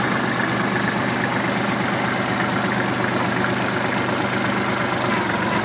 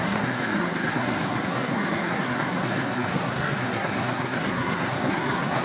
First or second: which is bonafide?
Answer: first